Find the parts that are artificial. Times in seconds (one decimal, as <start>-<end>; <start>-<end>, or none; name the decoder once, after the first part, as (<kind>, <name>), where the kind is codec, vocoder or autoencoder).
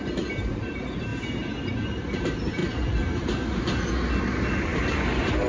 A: 0.0-1.1 (vocoder, BigVGAN v2); 1.7-2.6; 4.2-5.5